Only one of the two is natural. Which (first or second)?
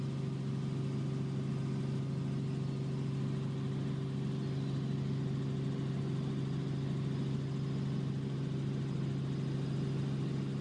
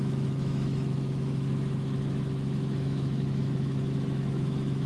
first